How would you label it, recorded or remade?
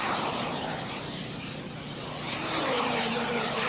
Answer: remade